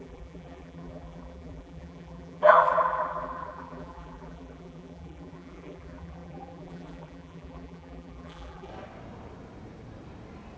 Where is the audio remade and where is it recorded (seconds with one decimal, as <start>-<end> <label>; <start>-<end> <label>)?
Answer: 0.0-8.7 remade; 8.7-10.6 recorded